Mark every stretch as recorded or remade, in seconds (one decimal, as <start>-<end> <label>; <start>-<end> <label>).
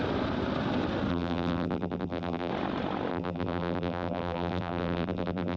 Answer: 0.0-1.1 recorded; 1.1-2.5 remade; 2.5-3.1 recorded; 3.1-5.6 remade